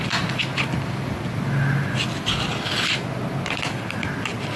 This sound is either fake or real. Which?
real